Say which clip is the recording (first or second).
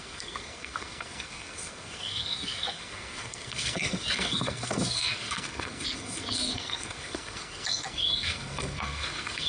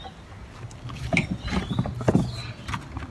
second